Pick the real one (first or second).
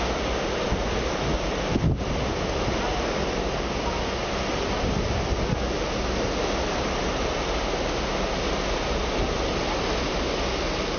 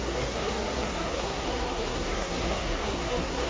first